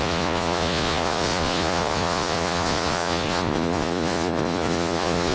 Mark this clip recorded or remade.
remade